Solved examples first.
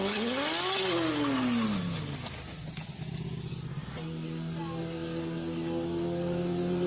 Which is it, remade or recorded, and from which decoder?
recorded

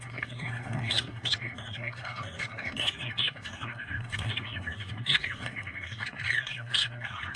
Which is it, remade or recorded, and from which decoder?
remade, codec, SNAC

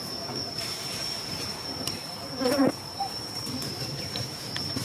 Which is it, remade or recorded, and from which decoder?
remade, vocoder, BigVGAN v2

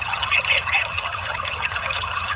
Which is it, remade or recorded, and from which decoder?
remade, vocoder, HiFi-GAN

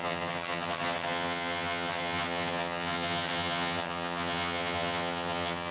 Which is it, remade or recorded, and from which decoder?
remade, vocoder, HiFi-GAN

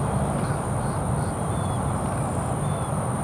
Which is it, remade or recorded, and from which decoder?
recorded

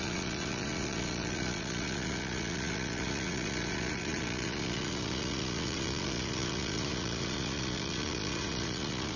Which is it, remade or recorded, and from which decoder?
remade, vocoder, Vocos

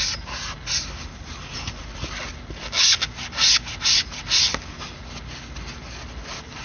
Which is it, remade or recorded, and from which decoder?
recorded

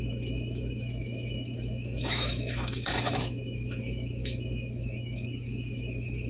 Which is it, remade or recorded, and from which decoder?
remade, autoencoder, DAC-VAE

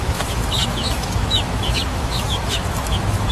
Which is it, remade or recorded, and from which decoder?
remade, autoencoder, DAC-VAE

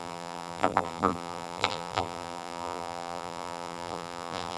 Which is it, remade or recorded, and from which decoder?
remade, vocoder, BigVGAN v2